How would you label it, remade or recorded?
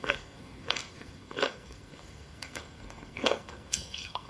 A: remade